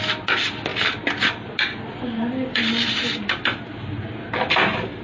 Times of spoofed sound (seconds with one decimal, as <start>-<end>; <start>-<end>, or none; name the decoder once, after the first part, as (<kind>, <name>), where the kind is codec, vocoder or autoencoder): none